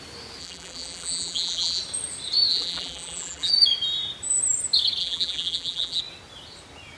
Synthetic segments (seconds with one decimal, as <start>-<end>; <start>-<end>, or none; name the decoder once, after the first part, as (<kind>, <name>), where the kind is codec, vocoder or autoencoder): 0.4-1.8 (vocoder, BigVGAN v2); 2.5-3.5; 5.0-6.0